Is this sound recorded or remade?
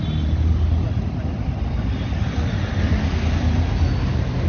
recorded